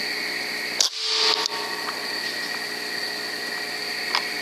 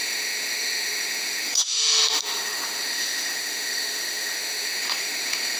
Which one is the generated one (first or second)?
second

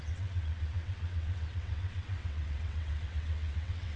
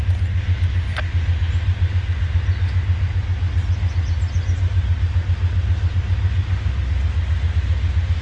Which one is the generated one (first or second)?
first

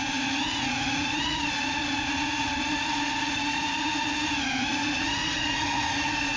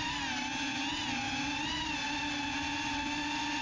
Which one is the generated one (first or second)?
first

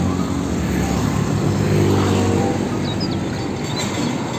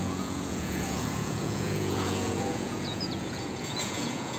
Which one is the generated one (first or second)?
second